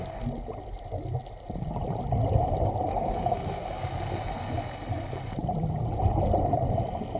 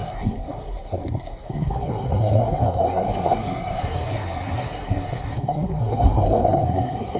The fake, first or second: second